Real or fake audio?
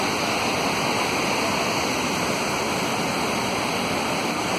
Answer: real